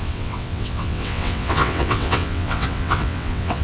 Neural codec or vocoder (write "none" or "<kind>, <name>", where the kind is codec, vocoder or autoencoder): vocoder, WaveNeXt